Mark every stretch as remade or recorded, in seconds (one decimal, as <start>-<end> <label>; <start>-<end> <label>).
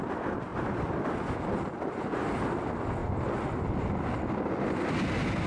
0.0-0.5 recorded; 0.5-1.0 remade; 1.0-5.5 recorded